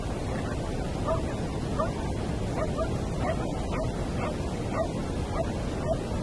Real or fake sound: real